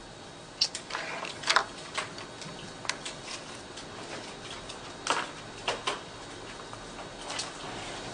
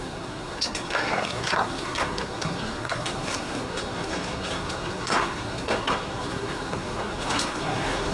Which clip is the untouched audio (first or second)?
first